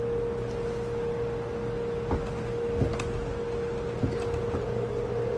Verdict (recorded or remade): recorded